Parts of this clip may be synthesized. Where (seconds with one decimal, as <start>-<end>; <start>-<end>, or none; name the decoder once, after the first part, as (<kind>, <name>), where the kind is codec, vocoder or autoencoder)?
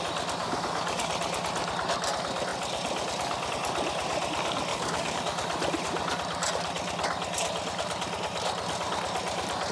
0.4-1.1 (codec, DAC); 4.7-5.2